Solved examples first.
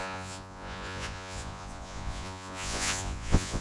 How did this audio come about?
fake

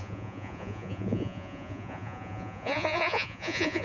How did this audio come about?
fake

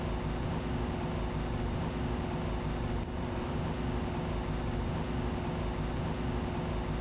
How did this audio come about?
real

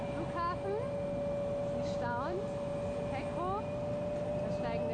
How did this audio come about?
real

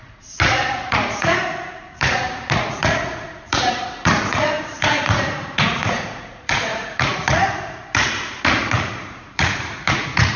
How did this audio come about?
fake